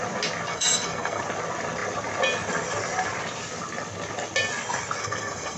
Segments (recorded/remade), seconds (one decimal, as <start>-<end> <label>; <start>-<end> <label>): 0.0-0.5 recorded; 0.5-1.2 remade; 1.2-5.0 recorded; 5.0-5.6 remade